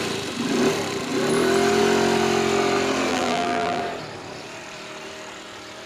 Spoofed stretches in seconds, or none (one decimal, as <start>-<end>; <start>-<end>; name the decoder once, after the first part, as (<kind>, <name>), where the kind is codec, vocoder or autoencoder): 3.1-3.8 (vocoder, BigVGAN v2)